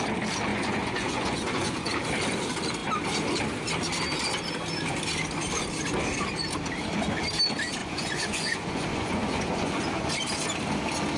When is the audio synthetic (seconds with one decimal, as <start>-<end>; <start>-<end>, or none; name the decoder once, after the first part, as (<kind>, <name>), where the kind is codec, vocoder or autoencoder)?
0.5-1.9 (vocoder, Vocos); 7.8-10.1